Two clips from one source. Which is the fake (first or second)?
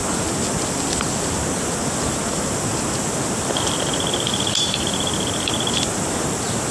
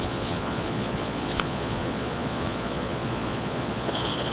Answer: second